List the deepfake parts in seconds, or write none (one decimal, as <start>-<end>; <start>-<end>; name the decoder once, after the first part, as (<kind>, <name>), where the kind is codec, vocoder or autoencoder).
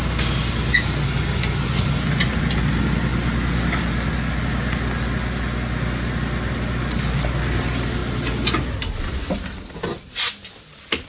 none